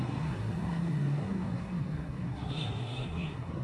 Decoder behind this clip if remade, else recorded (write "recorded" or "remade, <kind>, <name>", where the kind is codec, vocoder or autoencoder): remade, codec, SNAC